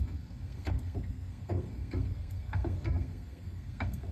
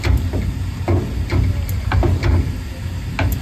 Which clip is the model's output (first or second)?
first